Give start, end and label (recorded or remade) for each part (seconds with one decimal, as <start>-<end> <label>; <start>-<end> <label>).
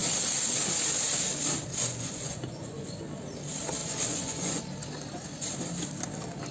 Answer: 0.0-1.7 recorded; 1.7-3.0 remade; 3.0-3.8 recorded; 3.8-4.6 remade; 4.6-6.5 recorded